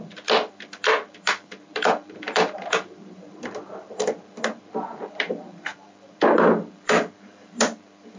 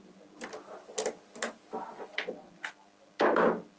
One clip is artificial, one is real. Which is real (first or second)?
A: second